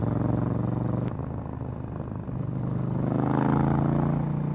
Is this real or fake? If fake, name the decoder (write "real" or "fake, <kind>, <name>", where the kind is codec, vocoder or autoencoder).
real